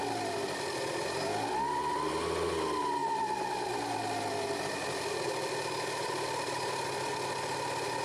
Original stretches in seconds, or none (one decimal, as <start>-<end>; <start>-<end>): 0.0-8.0